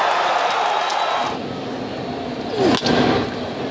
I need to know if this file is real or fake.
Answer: real